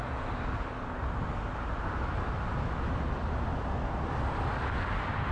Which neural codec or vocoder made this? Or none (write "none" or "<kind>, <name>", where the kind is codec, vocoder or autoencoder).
none